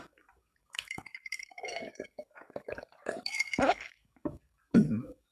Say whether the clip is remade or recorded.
remade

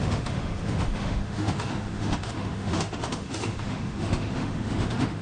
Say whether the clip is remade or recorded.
remade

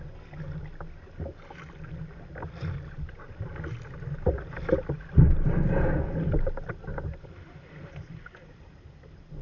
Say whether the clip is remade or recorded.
recorded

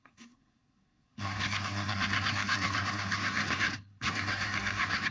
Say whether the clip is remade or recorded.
remade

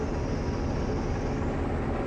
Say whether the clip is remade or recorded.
recorded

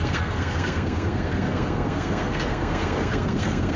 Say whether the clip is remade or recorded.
remade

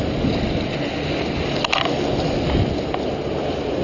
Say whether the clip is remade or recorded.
recorded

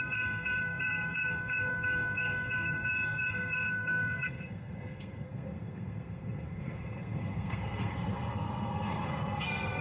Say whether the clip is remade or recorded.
remade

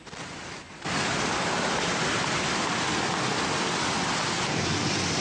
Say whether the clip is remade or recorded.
recorded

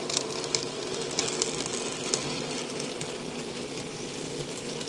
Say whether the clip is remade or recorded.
recorded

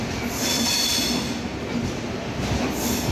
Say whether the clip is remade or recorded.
recorded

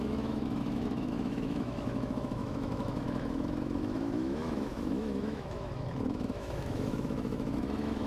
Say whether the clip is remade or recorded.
remade